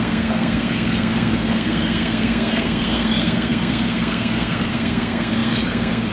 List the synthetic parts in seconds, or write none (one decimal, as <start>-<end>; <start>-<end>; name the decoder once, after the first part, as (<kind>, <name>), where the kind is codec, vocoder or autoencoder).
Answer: 0.0-6.1 (codec, SNAC)